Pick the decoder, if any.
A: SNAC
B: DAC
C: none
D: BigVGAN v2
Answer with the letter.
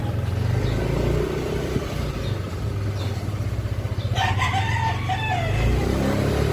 C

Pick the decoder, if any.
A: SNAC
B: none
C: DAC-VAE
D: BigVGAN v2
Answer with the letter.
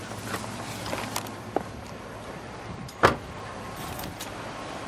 D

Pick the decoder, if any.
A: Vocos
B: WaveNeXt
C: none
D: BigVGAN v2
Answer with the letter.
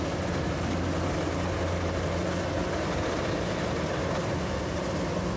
C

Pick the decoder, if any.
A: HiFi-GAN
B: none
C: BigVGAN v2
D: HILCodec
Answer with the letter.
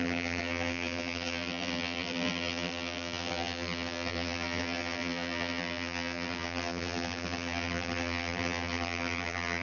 C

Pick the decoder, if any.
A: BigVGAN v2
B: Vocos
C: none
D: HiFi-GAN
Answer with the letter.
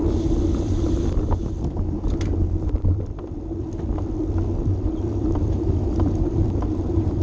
A